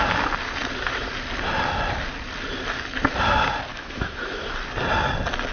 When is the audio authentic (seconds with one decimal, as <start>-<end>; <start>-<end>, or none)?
0.0-3.7; 4.4-5.5